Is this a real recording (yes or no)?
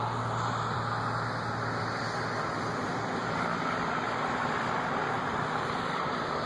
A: yes